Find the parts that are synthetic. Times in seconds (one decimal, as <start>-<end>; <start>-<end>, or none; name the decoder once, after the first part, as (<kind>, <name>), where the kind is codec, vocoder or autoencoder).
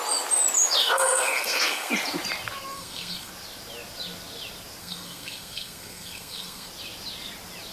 0.8-1.9 (codec, SNAC); 2.7-3.3; 4.8-6.7